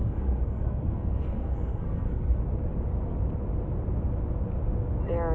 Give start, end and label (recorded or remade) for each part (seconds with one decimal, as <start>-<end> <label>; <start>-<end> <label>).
0.0-2.4 remade; 2.4-5.3 recorded